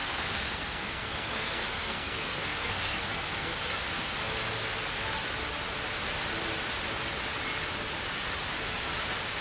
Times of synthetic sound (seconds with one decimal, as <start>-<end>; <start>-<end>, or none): 0.0-3.8